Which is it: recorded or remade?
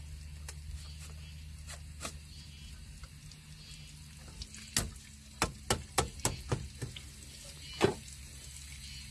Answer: recorded